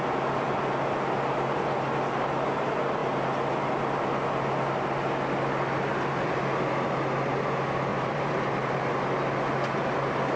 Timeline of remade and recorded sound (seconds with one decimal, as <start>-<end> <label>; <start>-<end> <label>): 0.0-7.9 recorded; 7.9-8.8 remade; 8.8-10.4 recorded